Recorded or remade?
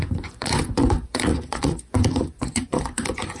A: remade